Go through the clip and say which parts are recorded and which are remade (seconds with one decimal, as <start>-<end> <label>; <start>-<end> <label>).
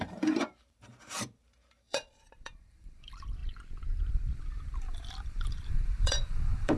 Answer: 0.0-3.4 remade; 3.4-4.1 recorded; 4.1-6.8 remade